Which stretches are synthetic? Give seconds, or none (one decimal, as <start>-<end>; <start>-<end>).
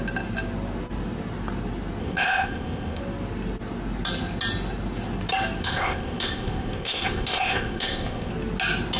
2.0-3.0; 5.6-8.3